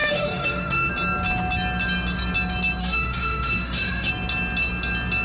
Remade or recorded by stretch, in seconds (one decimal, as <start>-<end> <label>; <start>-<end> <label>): 0.0-0.9 remade; 0.9-2.8 recorded; 2.8-4.1 remade; 4.1-5.2 recorded